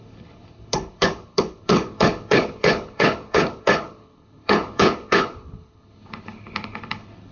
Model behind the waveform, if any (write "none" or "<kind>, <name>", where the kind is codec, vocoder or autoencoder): codec, HILCodec